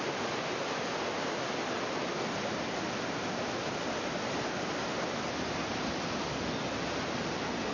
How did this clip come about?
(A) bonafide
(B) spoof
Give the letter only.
A